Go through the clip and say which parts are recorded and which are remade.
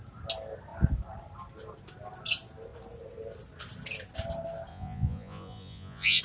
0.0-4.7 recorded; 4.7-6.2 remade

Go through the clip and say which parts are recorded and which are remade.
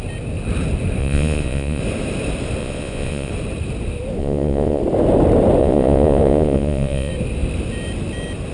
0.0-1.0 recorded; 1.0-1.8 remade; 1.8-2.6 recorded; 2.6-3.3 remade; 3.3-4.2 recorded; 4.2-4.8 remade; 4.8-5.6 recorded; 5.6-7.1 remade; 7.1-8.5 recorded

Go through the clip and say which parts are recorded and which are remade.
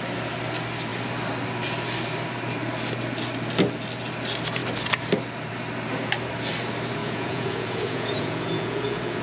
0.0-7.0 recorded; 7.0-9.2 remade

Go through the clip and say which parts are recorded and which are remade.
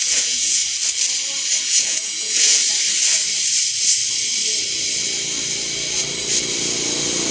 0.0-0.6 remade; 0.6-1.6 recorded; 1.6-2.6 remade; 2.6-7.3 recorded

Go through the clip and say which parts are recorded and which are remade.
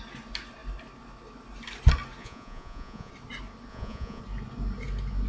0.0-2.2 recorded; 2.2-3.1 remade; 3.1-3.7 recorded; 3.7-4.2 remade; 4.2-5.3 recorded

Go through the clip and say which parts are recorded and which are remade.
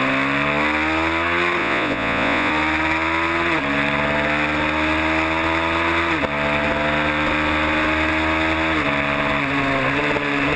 0.0-1.6 recorded; 1.6-2.5 remade; 2.5-10.6 recorded